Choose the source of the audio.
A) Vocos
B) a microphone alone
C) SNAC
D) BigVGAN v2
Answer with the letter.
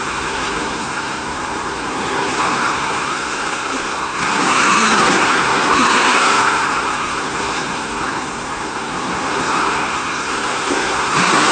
C